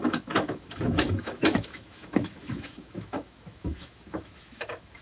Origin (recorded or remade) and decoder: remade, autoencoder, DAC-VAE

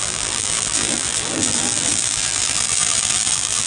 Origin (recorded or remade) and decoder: remade, vocoder, BigVGAN v2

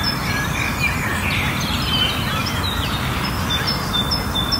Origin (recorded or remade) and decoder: recorded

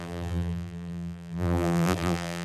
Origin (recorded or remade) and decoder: remade, vocoder, BigVGAN v2